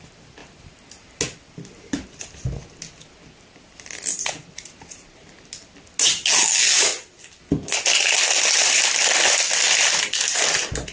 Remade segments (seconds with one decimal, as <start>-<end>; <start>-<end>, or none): none